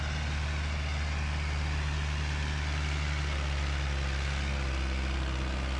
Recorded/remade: recorded